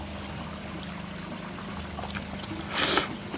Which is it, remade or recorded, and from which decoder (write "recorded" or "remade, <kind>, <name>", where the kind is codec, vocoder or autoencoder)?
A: recorded